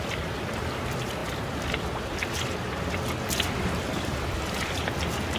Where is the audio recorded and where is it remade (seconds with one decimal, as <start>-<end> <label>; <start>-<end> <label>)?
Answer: 0.0-5.4 recorded